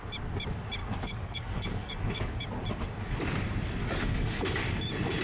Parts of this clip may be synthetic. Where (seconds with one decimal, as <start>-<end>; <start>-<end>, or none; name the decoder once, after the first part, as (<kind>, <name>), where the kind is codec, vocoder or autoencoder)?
0.8-2.4 (codec, DAC); 3.8-4.4